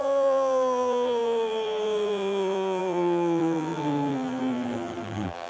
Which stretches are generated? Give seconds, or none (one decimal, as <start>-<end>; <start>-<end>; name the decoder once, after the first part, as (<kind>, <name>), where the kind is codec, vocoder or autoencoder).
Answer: 0.0-5.5 (vocoder, BigVGAN v2)